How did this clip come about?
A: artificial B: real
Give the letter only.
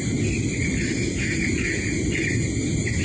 B